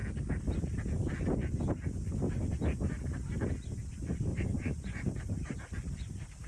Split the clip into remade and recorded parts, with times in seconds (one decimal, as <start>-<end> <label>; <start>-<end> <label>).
0.0-4.3 recorded; 4.3-5.2 remade; 5.2-6.5 recorded